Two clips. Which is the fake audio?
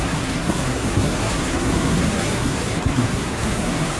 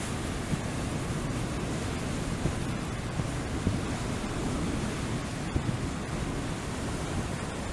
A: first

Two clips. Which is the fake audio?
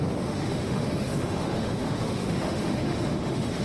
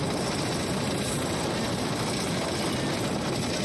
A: first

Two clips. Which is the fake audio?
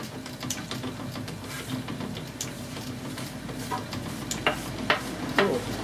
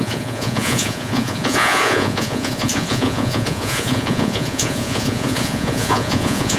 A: second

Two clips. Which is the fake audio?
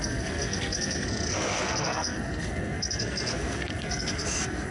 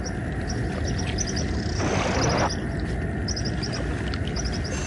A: first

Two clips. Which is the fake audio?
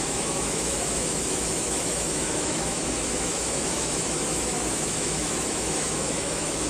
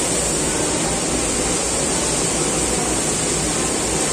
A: first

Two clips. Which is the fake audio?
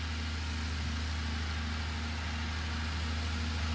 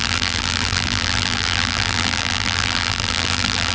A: second